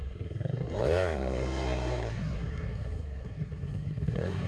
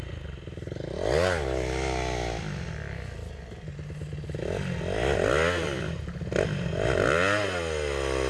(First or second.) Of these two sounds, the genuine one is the second